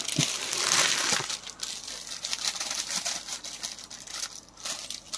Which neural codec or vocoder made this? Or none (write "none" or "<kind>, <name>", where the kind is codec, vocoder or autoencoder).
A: none